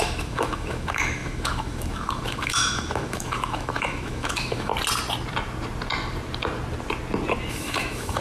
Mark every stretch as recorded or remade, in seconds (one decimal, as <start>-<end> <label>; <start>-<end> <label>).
0.0-4.7 remade; 4.7-7.5 recorded; 7.5-8.2 remade